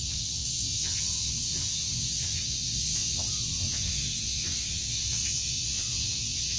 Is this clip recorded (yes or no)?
no